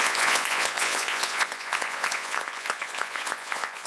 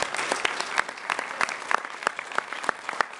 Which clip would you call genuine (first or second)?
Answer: second